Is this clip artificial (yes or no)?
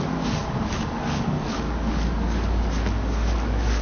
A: yes